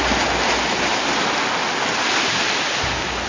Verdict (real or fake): real